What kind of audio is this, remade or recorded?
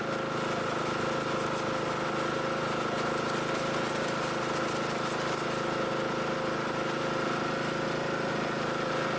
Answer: recorded